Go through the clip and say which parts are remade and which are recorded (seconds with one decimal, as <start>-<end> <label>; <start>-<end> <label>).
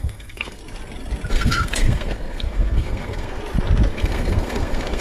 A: 0.0-0.6 remade; 0.6-1.3 recorded; 1.3-3.4 remade; 3.4-3.9 recorded; 3.9-5.0 remade